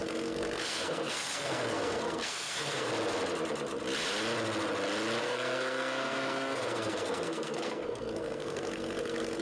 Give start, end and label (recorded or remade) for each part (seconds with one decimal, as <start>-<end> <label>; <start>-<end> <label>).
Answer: 0.0-2.9 remade; 2.9-5.2 recorded; 5.2-9.4 remade

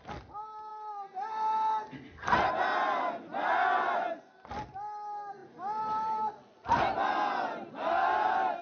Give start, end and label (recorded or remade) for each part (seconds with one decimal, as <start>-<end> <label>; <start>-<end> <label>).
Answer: 0.0-8.6 recorded